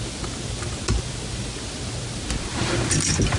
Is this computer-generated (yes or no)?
no